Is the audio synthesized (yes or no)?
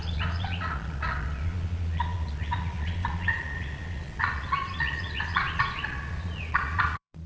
yes